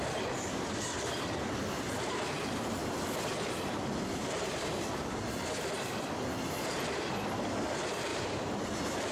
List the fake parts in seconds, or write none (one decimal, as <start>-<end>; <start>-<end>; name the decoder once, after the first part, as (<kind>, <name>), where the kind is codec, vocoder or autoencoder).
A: 2.8-7.1 (vocoder, BigVGAN v2); 8.1-9.1

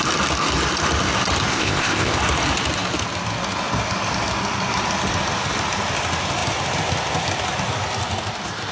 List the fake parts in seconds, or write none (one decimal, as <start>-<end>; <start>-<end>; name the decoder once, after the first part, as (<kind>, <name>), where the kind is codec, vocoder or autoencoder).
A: 1.5-2.2 (codec, ZipCodec)

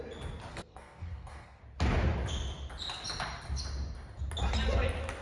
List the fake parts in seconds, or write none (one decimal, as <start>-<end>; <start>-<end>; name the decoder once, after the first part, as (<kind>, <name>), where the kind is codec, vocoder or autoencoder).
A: 0.5-1.6 (codec, SNAC)

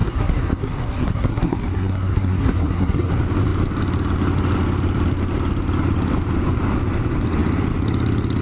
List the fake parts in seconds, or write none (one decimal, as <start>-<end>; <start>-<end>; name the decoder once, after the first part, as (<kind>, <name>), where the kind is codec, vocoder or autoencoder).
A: 0.0-3.1 (codec, SNAC)

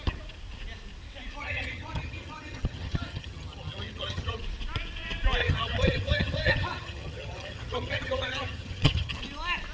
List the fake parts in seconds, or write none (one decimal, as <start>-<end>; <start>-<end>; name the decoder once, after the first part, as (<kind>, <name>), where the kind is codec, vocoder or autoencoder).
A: 1.4-4.4 (vocoder, HiFi-GAN); 5.4-9.2